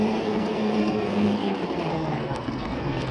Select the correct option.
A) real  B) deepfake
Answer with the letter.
B